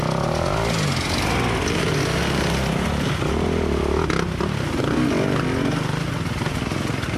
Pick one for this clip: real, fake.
real